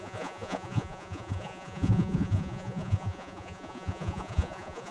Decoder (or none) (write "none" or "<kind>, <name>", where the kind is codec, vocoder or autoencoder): vocoder, Vocos